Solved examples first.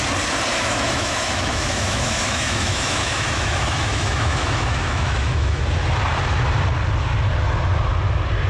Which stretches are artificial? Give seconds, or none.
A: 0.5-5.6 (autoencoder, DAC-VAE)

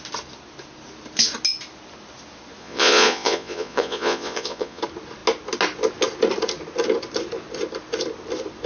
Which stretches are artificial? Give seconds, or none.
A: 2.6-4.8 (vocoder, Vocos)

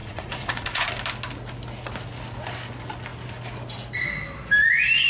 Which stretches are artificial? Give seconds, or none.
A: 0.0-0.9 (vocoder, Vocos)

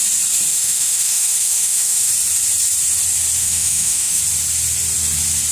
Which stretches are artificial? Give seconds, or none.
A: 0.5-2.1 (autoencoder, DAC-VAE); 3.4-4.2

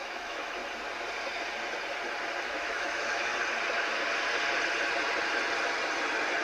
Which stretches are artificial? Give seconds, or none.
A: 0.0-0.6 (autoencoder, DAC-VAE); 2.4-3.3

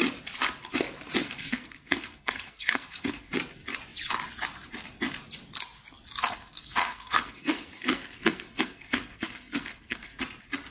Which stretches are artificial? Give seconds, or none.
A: 1.2-3.3 (codec, SNAC); 6.2-10.2

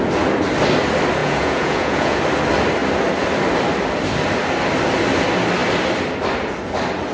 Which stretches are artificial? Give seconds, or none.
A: 1.2-2.2 (vocoder, Vocos)